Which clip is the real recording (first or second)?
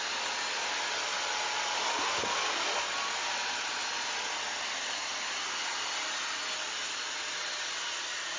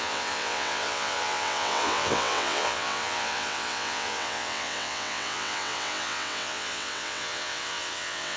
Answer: first